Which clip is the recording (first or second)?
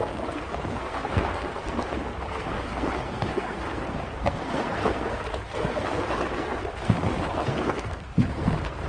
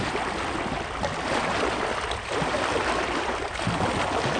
second